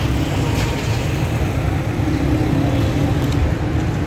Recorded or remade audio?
recorded